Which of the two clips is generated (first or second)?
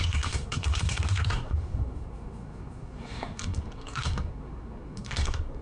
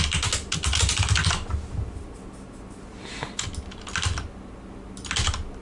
first